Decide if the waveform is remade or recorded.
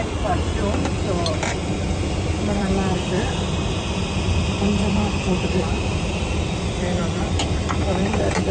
remade